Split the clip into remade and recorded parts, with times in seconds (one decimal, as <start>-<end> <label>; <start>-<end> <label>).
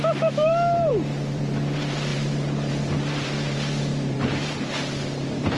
0.0-5.6 remade